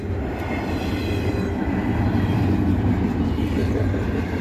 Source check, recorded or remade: recorded